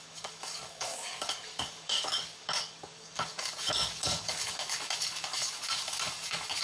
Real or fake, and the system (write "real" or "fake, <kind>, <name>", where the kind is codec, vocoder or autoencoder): fake, codec, DAC